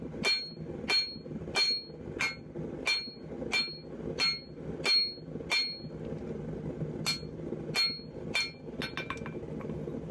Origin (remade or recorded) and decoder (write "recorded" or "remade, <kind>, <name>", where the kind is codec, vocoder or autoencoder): recorded